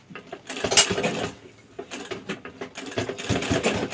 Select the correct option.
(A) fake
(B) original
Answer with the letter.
B